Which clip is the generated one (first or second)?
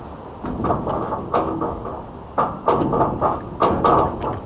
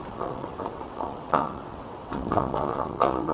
second